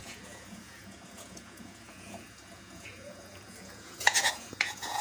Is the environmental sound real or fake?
fake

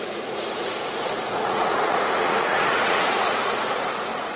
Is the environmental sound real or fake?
fake